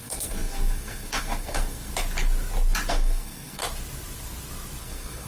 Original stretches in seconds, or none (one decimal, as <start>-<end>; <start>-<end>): 1.9-2.9; 3.6-4.8